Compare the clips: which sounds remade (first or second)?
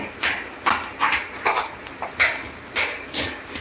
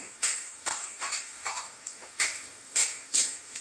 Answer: second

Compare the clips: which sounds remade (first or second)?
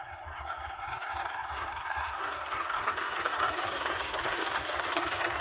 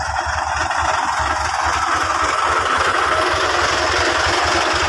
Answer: first